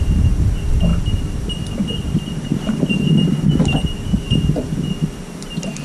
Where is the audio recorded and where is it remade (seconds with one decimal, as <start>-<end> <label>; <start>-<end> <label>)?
0.0-5.8 recorded